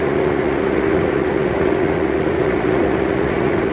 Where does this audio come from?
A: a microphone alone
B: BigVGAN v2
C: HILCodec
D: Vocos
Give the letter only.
D